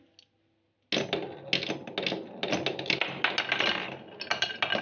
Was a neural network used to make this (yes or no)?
no